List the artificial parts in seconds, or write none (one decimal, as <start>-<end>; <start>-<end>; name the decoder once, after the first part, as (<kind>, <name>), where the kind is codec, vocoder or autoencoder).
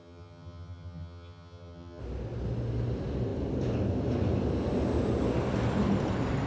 0.0-2.0 (vocoder, HiFi-GAN)